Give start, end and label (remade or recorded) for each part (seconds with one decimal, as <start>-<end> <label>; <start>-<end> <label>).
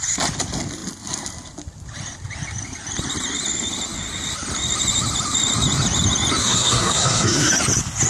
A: 0.0-6.4 recorded; 6.4-7.5 remade; 7.5-8.1 recorded